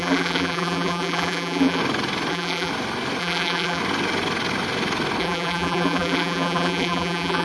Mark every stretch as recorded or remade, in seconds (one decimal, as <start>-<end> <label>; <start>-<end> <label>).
0.0-1.8 remade; 1.8-2.3 recorded; 2.3-2.7 remade; 2.7-3.2 recorded; 3.2-3.8 remade; 3.8-5.2 recorded; 5.2-7.4 remade